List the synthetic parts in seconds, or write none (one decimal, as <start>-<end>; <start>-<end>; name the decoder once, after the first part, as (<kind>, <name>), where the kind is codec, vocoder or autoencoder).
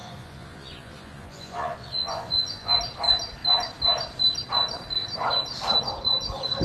0.0-2.8 (vocoder, Vocos)